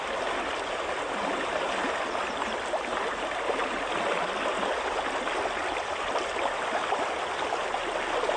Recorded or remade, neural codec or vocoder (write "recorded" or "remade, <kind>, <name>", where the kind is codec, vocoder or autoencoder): recorded